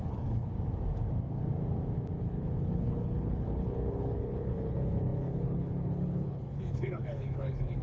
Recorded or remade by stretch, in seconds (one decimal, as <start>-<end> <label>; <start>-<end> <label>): 0.0-0.5 remade; 0.5-2.2 recorded; 2.2-7.8 remade